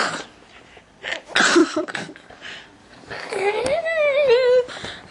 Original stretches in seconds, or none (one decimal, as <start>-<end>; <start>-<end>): 0.0-1.6; 2.3-2.8; 3.6-5.1